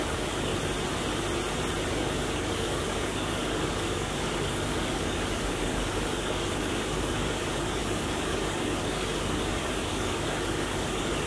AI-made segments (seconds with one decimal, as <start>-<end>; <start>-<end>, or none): 0.0-0.5; 1.9-11.3